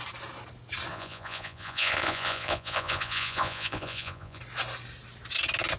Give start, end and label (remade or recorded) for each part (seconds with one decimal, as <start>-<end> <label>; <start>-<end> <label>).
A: 0.0-0.9 recorded; 0.9-4.4 remade; 4.4-5.8 recorded